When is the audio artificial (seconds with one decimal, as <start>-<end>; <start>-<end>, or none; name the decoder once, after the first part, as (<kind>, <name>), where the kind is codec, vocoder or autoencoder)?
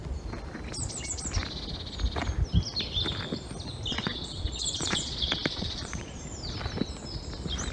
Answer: 3.9-6.2 (vocoder, Vocos)